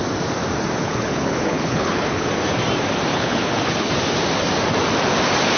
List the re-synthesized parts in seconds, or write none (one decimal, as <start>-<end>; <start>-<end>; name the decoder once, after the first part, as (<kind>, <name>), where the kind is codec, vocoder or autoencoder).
0.8-2.3 (codec, HILCodec); 3.1-3.9